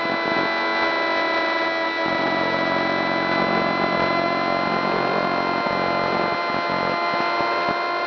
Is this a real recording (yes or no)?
yes